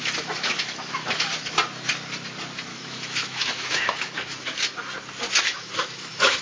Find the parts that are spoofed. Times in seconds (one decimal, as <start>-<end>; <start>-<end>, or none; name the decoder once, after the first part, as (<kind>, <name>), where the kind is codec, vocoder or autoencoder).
0.0-1.2 (autoencoder, DAC-VAE); 2.7-4.6; 5.5-6.4